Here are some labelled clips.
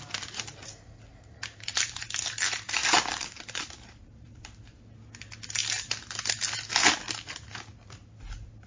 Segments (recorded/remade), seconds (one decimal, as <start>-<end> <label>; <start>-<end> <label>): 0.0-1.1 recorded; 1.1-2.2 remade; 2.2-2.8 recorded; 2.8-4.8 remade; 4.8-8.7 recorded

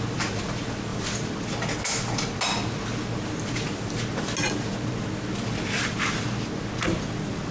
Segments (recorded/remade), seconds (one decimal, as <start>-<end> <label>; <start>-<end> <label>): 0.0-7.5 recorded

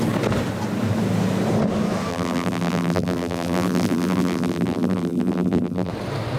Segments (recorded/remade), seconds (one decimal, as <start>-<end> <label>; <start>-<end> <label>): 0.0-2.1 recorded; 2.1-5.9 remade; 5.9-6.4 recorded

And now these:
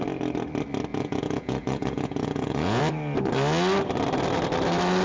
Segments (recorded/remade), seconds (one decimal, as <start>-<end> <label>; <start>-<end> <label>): 0.0-0.9 recorded; 0.9-2.8 remade; 2.8-5.0 recorded